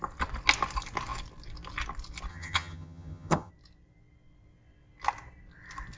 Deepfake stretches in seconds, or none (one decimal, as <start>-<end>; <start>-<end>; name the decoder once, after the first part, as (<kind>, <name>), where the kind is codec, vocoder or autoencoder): 2.3-3.5 (vocoder, HiFi-GAN)